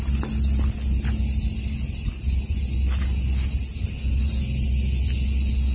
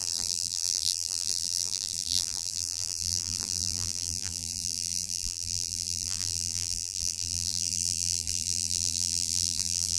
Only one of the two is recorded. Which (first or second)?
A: first